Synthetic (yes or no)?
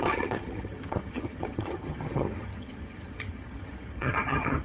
yes